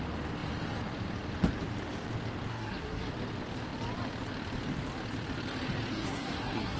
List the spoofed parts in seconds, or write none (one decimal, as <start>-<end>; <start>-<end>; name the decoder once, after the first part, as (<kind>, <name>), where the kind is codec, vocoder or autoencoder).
2.5-3.1 (codec, SNAC); 5.9-6.8